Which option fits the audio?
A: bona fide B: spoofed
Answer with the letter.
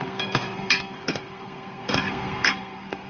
B